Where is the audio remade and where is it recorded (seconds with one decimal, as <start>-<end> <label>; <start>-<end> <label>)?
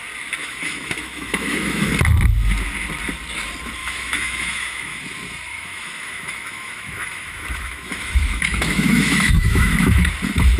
0.0-0.4 recorded; 0.4-1.9 remade; 1.9-3.8 recorded; 3.8-5.0 remade; 5.0-5.5 recorded; 5.5-10.1 remade; 10.1-10.6 recorded